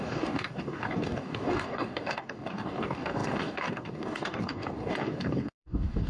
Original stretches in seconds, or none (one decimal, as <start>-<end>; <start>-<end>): none